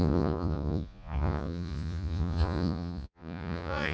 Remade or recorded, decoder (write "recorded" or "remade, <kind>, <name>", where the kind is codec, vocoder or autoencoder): remade, vocoder, Vocos